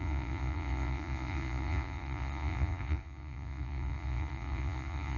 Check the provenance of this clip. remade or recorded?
remade